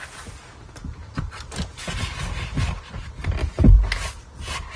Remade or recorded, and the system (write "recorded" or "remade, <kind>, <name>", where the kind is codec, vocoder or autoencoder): recorded